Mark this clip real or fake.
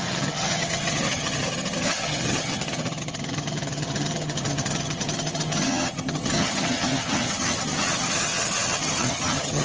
fake